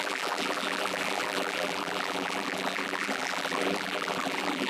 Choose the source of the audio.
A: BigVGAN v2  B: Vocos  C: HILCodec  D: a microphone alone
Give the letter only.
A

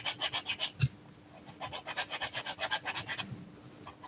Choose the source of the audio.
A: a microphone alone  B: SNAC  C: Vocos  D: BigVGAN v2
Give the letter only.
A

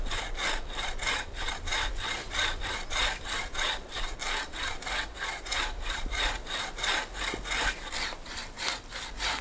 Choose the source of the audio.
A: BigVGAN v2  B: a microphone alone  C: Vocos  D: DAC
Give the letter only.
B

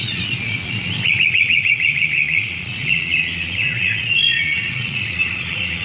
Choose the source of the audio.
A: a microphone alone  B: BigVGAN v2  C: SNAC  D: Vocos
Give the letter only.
D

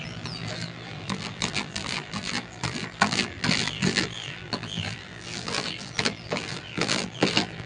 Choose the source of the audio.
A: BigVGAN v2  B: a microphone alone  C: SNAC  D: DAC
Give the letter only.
A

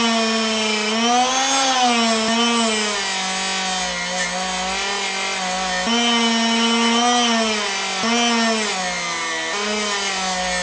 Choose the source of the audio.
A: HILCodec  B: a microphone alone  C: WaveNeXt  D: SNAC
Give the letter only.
B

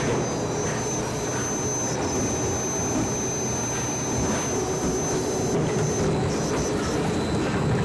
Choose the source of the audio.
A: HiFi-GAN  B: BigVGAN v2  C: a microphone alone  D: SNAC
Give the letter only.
C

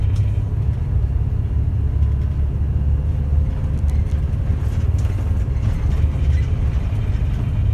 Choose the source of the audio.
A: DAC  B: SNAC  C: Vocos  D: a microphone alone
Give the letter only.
D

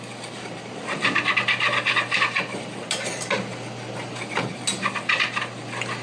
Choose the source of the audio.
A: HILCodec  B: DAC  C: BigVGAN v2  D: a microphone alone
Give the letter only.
D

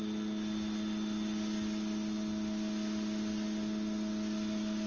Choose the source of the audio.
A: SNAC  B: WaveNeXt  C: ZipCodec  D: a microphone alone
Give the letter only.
D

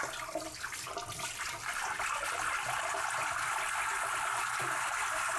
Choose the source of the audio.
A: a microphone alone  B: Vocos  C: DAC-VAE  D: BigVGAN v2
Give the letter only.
A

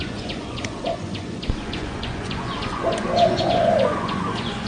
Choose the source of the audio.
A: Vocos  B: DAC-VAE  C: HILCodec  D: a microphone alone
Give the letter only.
A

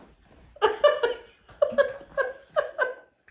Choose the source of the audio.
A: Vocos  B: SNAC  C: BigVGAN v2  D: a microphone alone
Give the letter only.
D